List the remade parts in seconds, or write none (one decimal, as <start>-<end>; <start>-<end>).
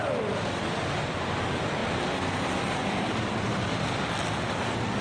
0.0-5.0